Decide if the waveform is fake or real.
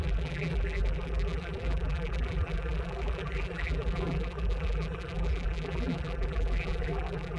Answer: fake